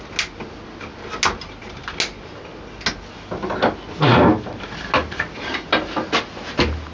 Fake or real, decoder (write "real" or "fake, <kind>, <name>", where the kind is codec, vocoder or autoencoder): real